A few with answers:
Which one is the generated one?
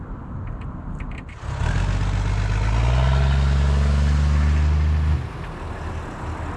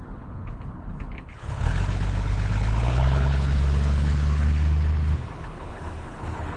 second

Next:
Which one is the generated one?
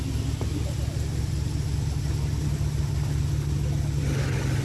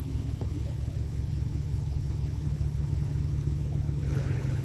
second